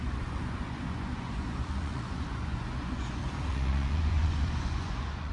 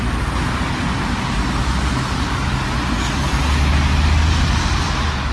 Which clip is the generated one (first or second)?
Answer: first